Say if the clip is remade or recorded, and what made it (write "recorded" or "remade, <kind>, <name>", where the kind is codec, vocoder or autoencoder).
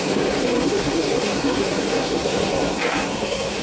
remade, codec, SNAC